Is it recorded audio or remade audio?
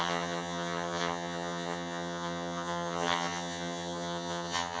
remade